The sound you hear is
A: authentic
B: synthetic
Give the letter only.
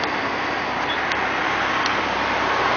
A